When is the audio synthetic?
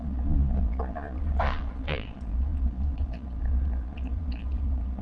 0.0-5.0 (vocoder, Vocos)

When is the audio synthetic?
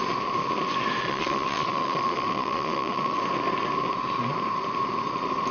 1.0-3.2 (vocoder, Vocos)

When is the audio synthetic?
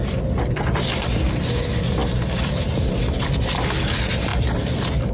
none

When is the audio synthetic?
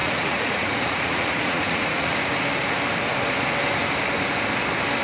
0.0-2.1 (vocoder, Vocos)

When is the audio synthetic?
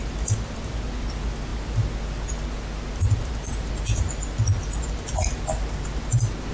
none